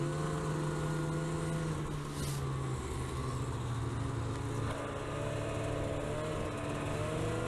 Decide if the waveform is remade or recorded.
recorded